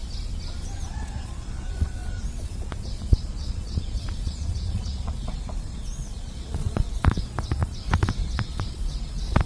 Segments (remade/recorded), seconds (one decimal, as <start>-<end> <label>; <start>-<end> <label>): 0.0-0.8 recorded; 0.8-9.5 remade